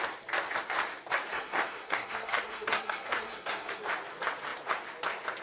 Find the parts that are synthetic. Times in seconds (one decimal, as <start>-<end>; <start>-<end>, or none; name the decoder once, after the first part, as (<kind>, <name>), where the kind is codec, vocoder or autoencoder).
1.3-3.8 (codec, SNAC)